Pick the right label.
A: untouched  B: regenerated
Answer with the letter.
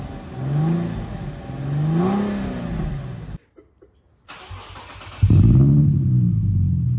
A